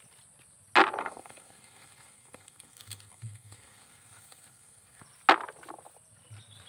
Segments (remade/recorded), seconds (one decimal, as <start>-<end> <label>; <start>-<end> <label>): 0.0-1.0 recorded; 1.0-5.0 remade; 5.0-6.7 recorded

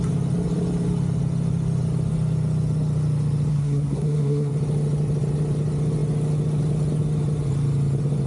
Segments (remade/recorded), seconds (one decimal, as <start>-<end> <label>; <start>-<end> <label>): 0.0-3.5 recorded; 3.5-4.5 remade; 4.5-8.3 recorded

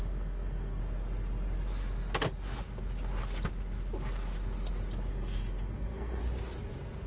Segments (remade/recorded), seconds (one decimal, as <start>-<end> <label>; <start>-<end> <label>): 0.0-0.8 remade; 0.8-5.1 recorded; 5.1-6.2 remade; 6.2-7.1 recorded